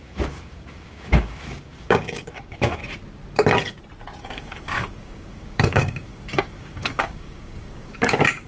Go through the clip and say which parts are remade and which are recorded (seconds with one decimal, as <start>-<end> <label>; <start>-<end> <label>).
0.0-2.8 remade; 2.8-4.2 recorded; 4.2-8.5 remade